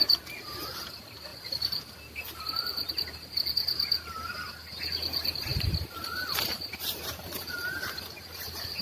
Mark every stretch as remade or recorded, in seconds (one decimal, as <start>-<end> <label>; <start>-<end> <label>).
0.0-5.5 recorded; 5.5-8.0 remade; 8.0-8.8 recorded